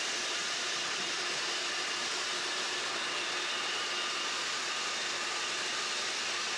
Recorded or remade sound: recorded